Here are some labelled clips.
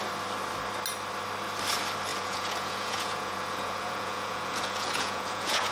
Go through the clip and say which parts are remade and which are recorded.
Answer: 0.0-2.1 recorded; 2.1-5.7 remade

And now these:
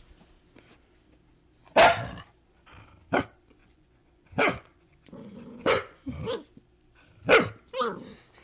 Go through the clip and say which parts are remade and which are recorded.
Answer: 0.0-3.6 recorded; 3.6-6.2 remade; 6.2-8.4 recorded

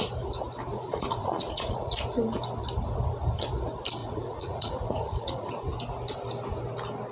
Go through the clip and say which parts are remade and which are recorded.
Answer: 0.0-0.7 recorded; 0.7-1.9 remade; 1.9-4.0 recorded; 4.0-5.5 remade; 5.5-7.1 recorded

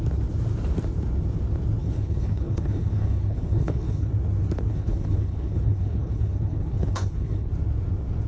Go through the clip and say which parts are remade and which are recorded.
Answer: 0.0-1.8 recorded; 1.8-4.1 remade; 4.1-4.7 recorded; 4.7-7.5 remade; 7.5-8.3 recorded